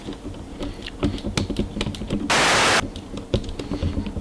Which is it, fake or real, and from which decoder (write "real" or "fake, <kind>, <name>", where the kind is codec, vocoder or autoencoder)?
real